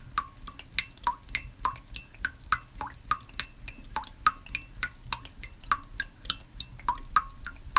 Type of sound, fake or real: real